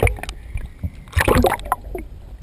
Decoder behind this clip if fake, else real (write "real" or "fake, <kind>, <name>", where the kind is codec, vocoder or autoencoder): real